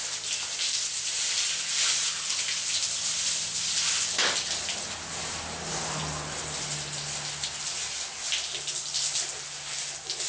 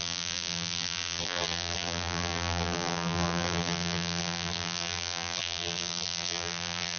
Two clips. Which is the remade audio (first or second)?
second